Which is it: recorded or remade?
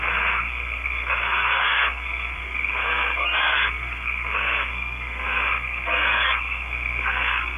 remade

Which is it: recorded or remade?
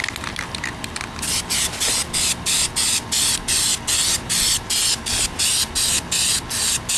recorded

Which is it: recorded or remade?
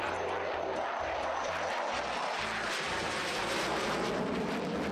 recorded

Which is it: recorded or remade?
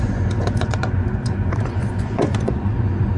remade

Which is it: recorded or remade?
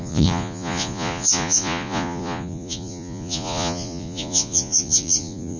remade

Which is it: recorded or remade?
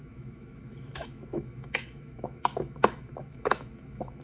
remade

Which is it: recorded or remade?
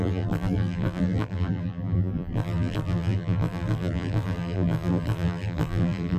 remade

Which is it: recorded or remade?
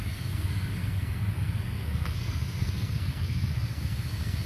remade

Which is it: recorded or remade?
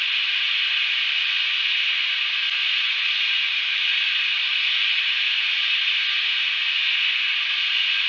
recorded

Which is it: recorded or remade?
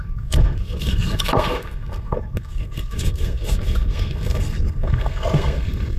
remade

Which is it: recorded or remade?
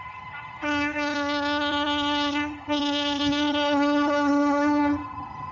remade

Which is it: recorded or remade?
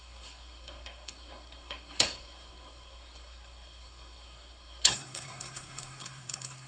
remade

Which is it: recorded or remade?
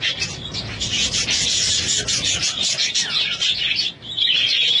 recorded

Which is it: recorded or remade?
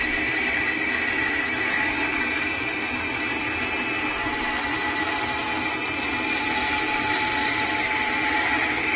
recorded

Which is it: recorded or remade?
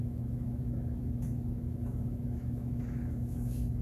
remade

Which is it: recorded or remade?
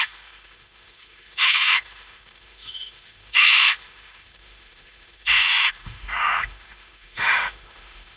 remade